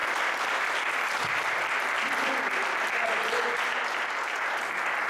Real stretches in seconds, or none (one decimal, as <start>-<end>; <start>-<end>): 0.0-5.1